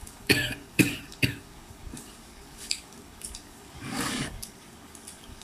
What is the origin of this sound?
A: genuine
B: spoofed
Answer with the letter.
B